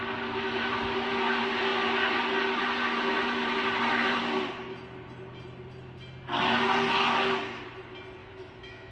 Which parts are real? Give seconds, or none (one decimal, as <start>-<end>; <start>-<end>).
0.0-8.2